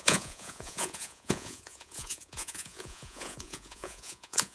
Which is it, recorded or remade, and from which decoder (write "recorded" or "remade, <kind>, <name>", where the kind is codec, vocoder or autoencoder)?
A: remade, vocoder, Vocos